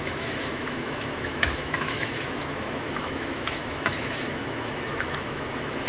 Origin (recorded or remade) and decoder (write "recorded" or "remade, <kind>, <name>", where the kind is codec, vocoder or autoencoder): remade, autoencoder, DAC-VAE